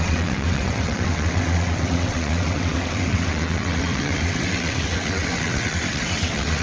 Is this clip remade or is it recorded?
remade